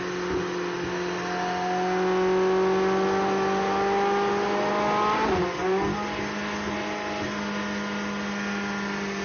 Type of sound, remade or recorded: recorded